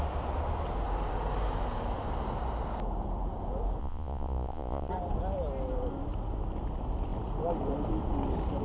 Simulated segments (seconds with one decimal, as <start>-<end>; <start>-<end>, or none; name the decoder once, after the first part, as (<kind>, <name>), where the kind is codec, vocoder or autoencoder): 3.8-4.9 (vocoder, Vocos)